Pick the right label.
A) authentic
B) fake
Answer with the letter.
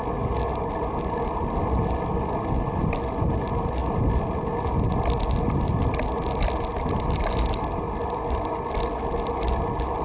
A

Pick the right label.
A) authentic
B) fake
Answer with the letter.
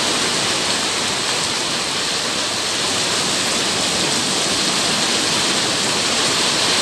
A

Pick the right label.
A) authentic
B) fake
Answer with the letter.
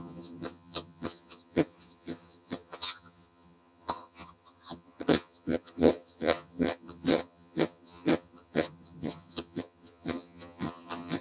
B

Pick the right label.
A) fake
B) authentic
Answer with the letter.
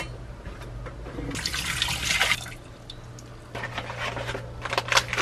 B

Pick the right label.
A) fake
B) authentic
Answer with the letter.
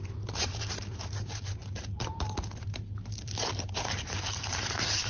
A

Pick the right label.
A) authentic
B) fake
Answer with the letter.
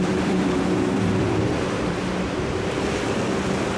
B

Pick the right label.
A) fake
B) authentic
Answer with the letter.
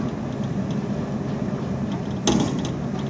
B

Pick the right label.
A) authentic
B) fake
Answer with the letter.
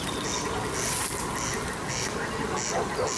A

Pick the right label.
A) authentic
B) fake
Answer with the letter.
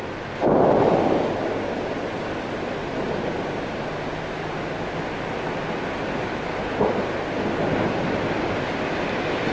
A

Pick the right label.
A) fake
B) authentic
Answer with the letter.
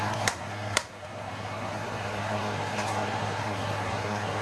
A